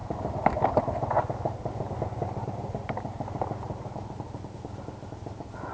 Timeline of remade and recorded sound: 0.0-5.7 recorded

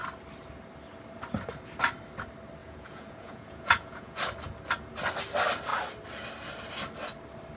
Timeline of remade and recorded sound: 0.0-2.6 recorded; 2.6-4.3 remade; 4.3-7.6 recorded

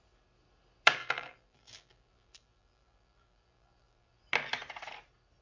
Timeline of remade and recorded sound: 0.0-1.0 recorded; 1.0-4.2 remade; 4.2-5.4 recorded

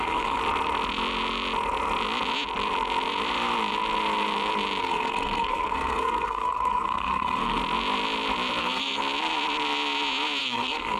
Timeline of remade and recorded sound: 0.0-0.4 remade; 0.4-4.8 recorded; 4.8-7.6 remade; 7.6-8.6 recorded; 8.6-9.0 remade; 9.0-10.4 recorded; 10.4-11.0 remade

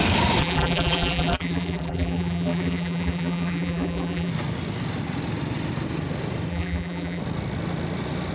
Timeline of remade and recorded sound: 0.0-0.4 recorded; 0.4-4.3 remade; 4.3-6.5 recorded; 6.5-7.2 remade; 7.2-8.3 recorded

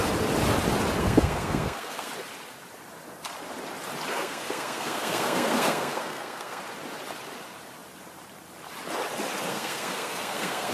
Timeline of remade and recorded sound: 0.0-1.0 recorded; 1.0-2.1 remade; 2.1-4.1 recorded; 4.1-6.6 remade; 6.6-9.5 recorded; 9.5-10.7 remade

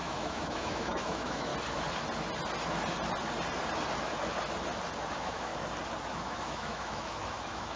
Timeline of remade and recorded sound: 0.0-1.5 remade; 1.5-5.1 recorded; 5.1-5.5 remade; 5.5-6.1 recorded; 6.1-7.8 remade